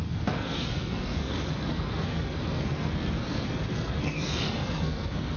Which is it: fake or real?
fake